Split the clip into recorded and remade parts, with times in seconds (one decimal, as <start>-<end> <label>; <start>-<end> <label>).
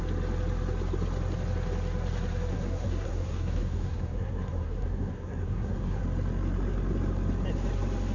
0.0-2.5 recorded; 2.5-6.0 remade; 6.0-8.1 recorded